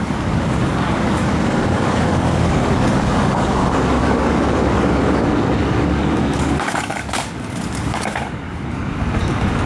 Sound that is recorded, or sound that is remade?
remade